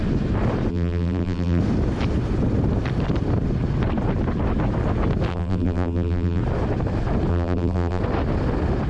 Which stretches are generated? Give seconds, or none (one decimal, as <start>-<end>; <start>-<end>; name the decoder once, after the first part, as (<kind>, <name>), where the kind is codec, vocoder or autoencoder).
0.7-1.6 (vocoder, BigVGAN v2); 5.3-6.4; 7.3-8.0

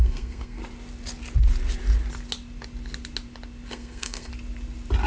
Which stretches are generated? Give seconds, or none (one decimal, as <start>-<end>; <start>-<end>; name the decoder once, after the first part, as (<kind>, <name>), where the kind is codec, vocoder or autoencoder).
0.0-0.6 (codec, SNAC); 3.7-4.3